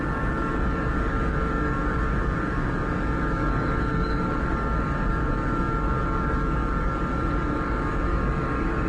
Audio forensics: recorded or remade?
remade